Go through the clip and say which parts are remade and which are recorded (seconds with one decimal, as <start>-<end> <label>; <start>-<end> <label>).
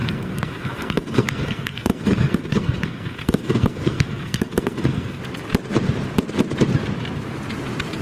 0.0-5.2 remade; 5.2-8.0 recorded